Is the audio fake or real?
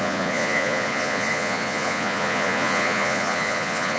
fake